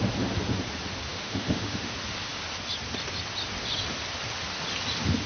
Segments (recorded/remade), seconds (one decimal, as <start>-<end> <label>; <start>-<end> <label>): 0.0-1.1 recorded; 1.1-1.9 remade; 1.9-5.3 recorded